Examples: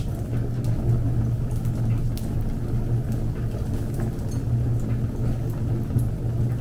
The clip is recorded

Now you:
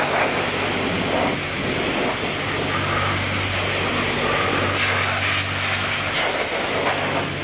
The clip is recorded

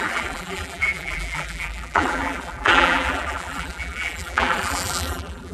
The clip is remade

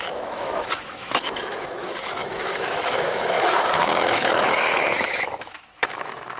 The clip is remade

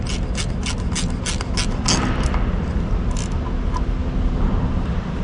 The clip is recorded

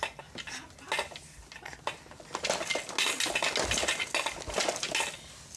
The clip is recorded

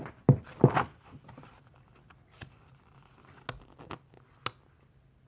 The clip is recorded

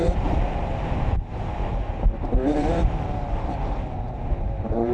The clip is remade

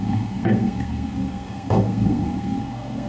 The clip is remade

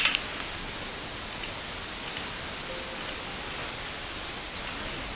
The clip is recorded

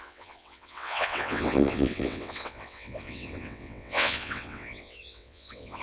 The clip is remade